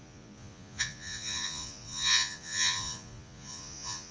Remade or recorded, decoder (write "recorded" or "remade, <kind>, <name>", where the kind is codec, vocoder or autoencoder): remade, vocoder, Vocos